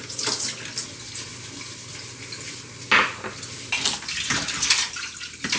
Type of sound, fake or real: real